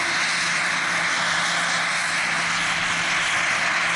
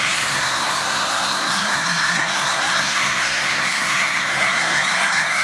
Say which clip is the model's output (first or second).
second